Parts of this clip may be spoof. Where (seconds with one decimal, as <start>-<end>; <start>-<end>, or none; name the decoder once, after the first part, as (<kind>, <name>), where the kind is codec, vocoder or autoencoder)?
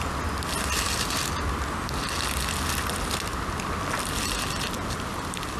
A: 3.3-5.6 (vocoder, BigVGAN v2)